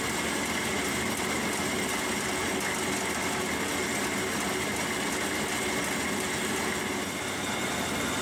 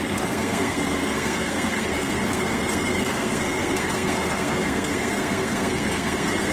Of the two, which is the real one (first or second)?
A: first